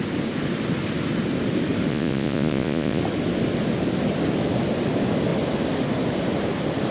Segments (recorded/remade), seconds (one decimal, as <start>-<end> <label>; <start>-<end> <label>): 0.0-1.9 recorded; 1.9-3.0 remade; 3.0-6.9 recorded